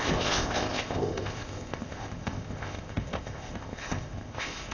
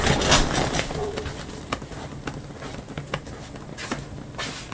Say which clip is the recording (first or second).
second